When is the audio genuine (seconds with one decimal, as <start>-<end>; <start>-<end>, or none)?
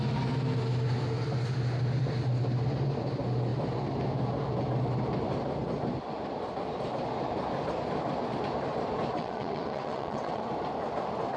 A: 0.0-9.2; 10.4-11.4